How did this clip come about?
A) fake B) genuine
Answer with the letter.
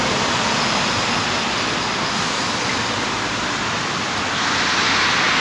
A